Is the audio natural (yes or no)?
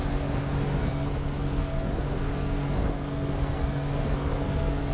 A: no